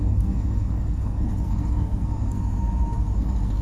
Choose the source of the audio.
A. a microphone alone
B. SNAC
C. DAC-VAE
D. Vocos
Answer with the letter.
B